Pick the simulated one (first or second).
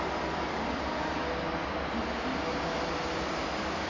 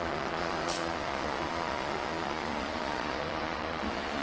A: second